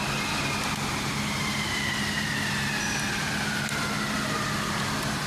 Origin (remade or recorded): recorded